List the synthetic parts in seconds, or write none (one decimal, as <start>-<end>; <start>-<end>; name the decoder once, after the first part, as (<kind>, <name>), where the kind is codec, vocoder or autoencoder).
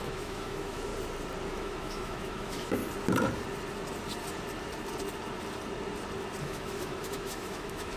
0.0-0.9 (autoencoder, DAC-VAE); 1.5-2.8; 6.4-8.0